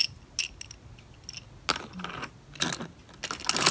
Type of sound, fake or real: real